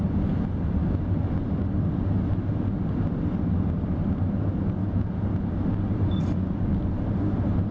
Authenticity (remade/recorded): recorded